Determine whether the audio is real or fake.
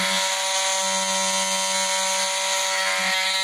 real